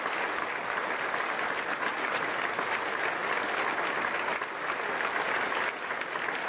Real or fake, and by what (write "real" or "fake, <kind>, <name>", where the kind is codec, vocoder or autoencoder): real